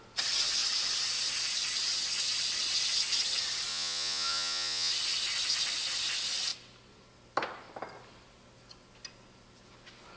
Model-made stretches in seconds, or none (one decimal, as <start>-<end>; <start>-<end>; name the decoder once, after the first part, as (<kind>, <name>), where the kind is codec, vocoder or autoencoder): 3.7-4.9 (vocoder, Vocos)